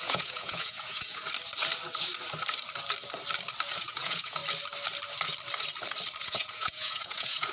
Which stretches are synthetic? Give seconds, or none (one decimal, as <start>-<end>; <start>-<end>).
0.0-1.2; 3.8-4.4; 6.2-7.5